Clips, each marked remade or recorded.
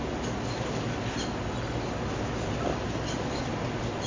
recorded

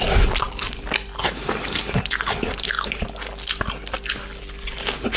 recorded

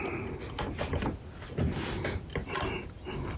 recorded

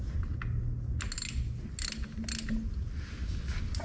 recorded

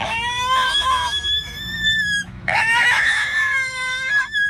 remade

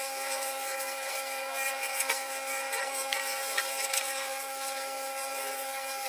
remade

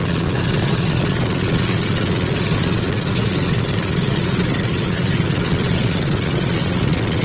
remade